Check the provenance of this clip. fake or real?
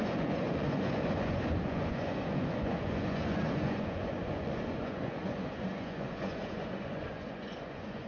fake